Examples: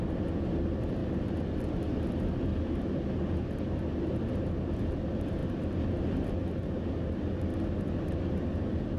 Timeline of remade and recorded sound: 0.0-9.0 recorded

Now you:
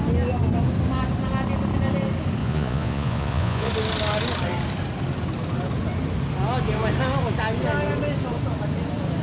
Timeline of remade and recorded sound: 0.0-2.4 recorded; 2.4-3.7 remade; 3.7-9.2 recorded

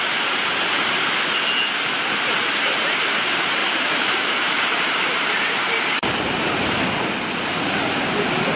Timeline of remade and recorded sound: 0.0-3.6 recorded; 3.6-6.8 remade; 6.8-8.6 recorded

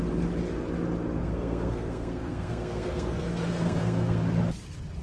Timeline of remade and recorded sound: 0.0-1.2 recorded; 1.2-4.2 remade; 4.2-5.0 recorded

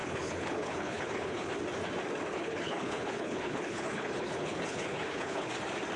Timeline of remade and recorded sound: 0.0-1.5 remade; 1.5-2.3 recorded; 2.3-5.5 remade; 5.5-6.0 recorded